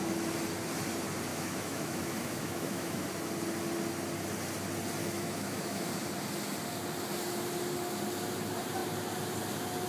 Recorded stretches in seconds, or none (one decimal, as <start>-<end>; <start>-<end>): 0.0-1.3; 3.0-5.0; 5.9-9.9

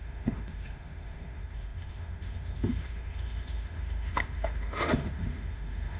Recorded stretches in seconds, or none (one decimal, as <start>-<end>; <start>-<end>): none

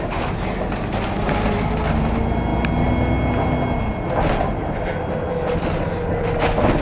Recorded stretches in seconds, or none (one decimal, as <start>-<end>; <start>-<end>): 0.0-6.8

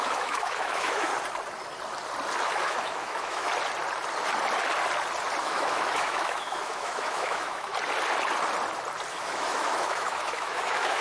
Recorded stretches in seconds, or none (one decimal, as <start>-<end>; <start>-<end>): 1.1-2.4; 3.5-5.4; 7.7-9.1

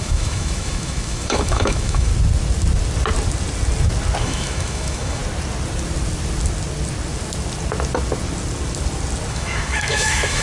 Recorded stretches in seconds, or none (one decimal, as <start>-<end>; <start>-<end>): 2.1-4.2; 5.2-9.3

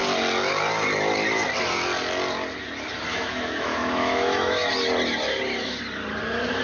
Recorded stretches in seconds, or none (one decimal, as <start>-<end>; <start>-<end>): 0.0-3.1; 4.7-6.6